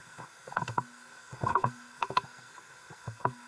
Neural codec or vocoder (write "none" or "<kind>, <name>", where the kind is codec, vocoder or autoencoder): codec, SNAC